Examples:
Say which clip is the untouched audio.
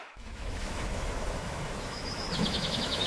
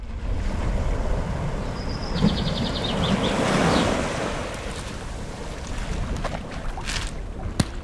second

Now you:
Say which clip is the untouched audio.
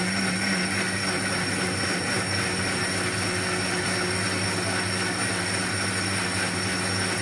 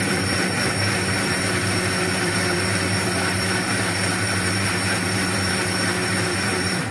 first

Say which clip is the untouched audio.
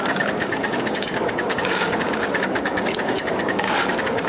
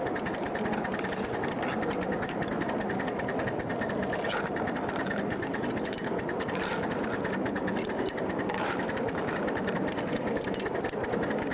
second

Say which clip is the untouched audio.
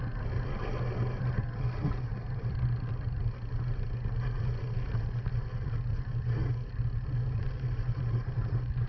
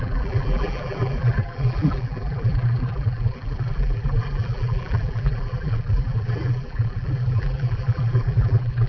first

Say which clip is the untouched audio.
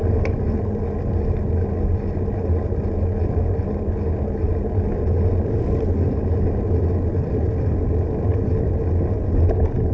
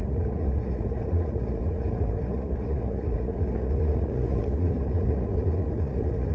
first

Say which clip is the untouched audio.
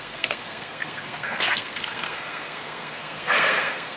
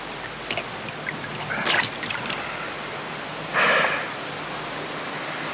second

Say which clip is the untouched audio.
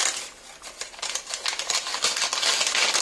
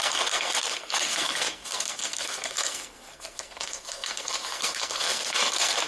first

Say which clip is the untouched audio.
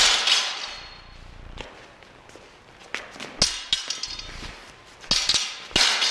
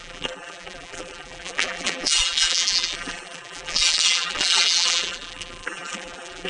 first